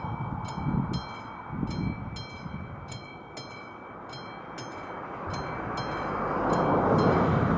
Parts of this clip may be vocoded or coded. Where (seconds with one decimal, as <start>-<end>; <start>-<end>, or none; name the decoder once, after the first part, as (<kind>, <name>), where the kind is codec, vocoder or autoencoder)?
none